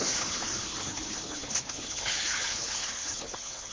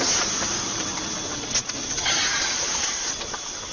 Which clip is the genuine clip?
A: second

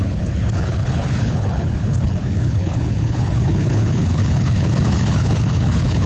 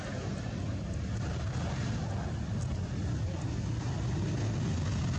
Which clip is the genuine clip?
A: second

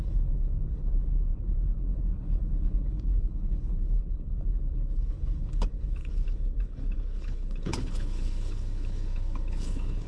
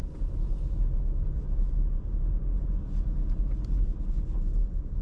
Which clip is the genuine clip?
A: second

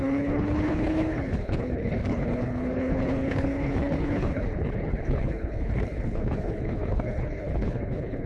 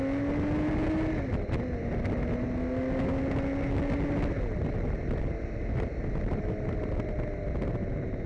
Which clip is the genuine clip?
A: second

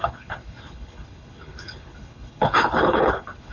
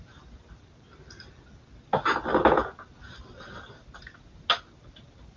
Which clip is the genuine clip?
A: second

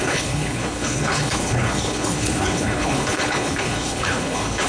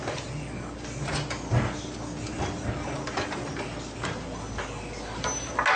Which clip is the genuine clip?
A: second